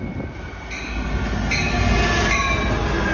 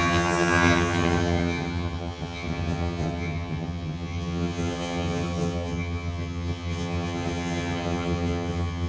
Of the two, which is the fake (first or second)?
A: second